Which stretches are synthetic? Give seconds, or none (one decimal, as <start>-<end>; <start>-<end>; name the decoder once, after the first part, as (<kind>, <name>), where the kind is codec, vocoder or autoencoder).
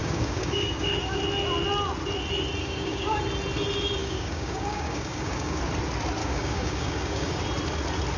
0.0-1.2 (codec, DAC); 2.6-3.2; 4.0-5.6; 6.2-7.4